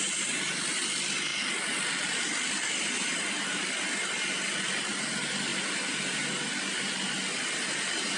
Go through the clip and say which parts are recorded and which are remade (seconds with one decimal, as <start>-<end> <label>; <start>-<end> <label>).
0.0-8.2 recorded